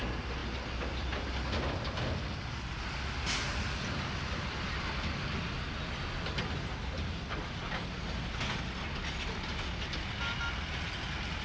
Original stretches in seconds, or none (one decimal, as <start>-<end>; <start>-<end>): 0.0-11.4

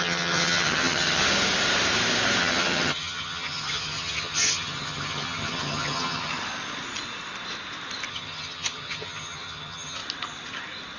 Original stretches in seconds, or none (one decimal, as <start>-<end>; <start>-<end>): 1.2-2.4; 6.3-8.1; 10.0-11.0

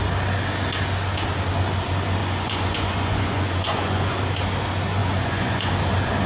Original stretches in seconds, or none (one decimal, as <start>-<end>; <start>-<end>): 0.0-2.2; 4.2-5.0; 5.7-6.3